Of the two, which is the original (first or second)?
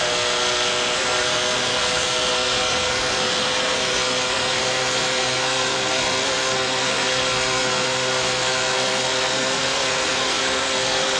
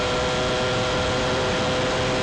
second